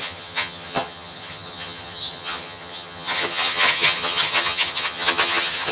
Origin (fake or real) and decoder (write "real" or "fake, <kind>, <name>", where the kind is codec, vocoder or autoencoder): fake, vocoder, HiFi-GAN